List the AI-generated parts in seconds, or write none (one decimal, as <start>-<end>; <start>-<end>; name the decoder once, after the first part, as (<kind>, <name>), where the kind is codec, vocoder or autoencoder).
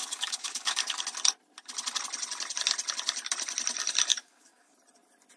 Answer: 0.0-1.0 (codec, DAC); 4.1-4.7